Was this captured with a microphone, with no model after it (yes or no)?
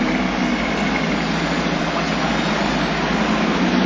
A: yes